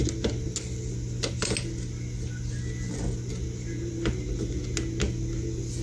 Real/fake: real